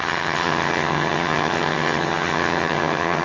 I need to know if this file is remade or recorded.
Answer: remade